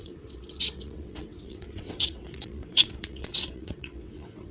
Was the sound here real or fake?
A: fake